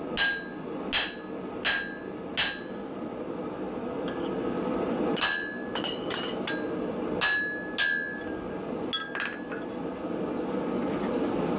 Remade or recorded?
recorded